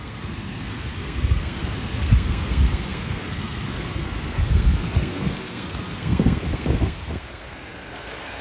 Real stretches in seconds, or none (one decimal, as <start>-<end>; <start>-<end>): none